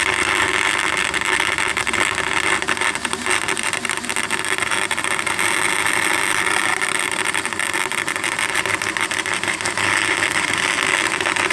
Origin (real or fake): real